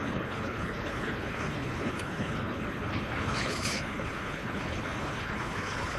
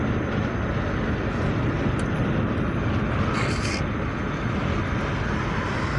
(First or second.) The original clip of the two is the second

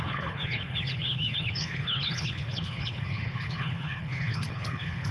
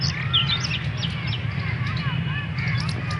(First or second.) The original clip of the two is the second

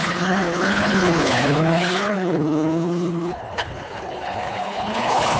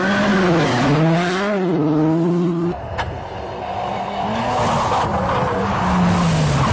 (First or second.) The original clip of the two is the second